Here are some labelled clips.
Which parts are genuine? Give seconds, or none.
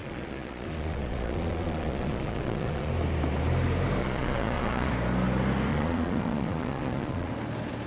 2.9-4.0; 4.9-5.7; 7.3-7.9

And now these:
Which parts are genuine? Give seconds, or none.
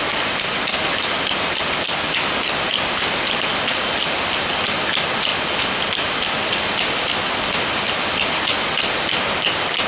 0.0-9.9